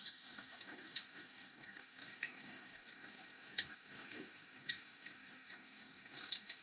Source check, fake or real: fake